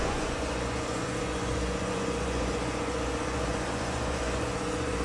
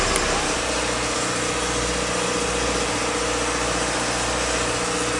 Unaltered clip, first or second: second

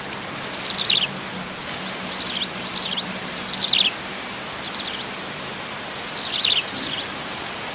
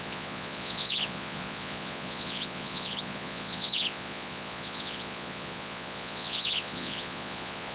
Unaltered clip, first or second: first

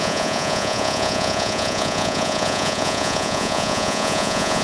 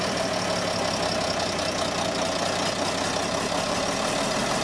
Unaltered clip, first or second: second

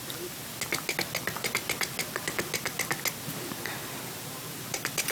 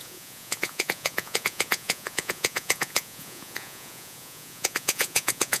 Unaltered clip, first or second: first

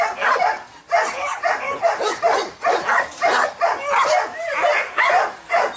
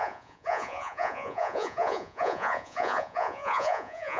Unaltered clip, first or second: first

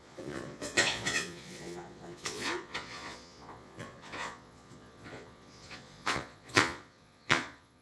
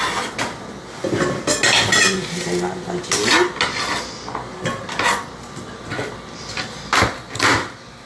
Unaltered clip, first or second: second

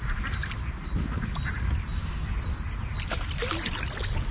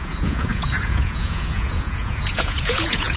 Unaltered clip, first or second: first